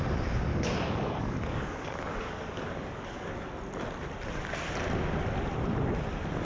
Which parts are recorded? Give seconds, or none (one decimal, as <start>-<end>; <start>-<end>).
0.0-0.5; 3.3-6.4